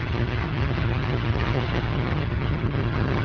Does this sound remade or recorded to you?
remade